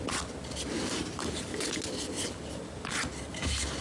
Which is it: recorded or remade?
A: recorded